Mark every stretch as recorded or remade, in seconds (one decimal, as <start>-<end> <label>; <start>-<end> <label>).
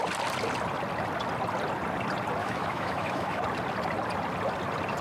0.0-2.4 recorded; 2.4-3.4 remade; 3.4-5.0 recorded